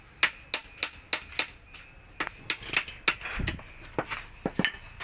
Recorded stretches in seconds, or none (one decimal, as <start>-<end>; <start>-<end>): 0.0-5.0